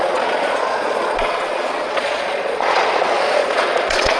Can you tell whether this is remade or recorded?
remade